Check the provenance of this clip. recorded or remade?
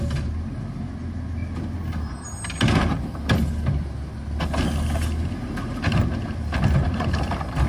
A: recorded